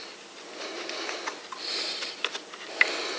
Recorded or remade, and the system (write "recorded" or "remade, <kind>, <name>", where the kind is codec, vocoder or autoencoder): recorded